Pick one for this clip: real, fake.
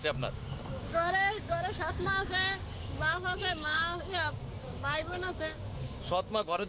fake